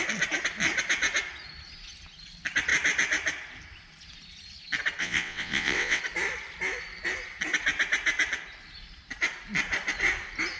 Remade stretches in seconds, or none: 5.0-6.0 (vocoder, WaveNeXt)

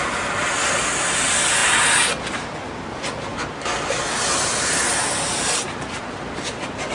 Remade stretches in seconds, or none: none

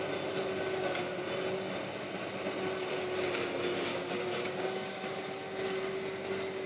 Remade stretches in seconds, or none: 3.9-5.0 (codec, DAC)